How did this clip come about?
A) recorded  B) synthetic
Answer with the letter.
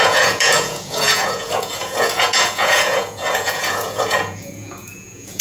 B